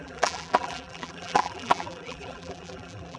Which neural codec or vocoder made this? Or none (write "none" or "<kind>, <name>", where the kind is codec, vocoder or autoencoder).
vocoder, BigVGAN v2